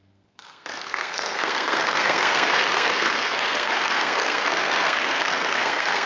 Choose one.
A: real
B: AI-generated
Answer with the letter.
B